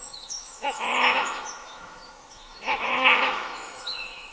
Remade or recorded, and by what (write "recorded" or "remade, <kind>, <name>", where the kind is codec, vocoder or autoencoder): remade, autoencoder, DAC-VAE